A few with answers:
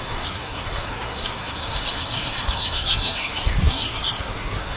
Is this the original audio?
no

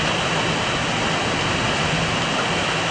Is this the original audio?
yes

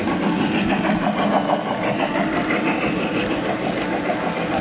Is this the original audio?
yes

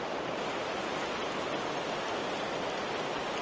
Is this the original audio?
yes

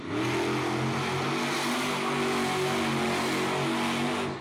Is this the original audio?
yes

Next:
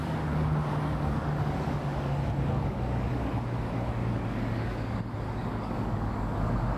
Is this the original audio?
no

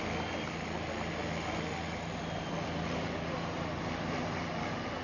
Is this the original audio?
yes